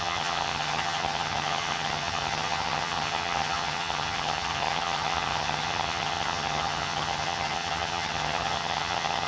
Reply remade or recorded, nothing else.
remade